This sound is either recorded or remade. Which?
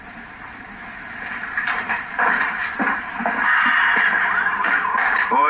remade